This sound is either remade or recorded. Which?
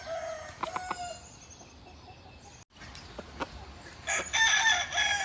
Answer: recorded